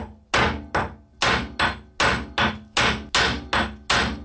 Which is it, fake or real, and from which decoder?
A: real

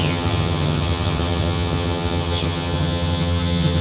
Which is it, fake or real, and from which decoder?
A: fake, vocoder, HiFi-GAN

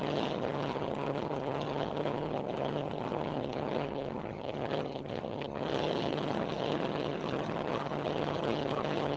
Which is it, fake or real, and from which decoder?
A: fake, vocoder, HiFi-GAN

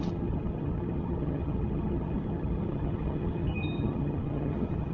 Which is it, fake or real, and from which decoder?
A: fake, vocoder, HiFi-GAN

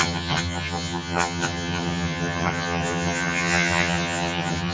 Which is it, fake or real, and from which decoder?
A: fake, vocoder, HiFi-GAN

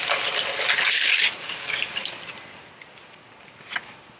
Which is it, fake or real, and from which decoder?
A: real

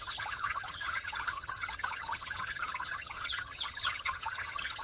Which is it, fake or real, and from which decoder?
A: fake, vocoder, HiFi-GAN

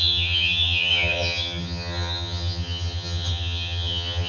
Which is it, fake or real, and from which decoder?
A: fake, vocoder, HiFi-GAN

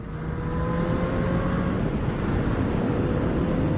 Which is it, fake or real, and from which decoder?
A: real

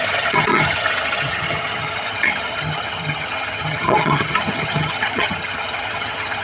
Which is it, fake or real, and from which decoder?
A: fake, vocoder, HiFi-GAN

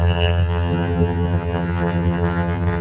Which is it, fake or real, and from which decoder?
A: fake, vocoder, HiFi-GAN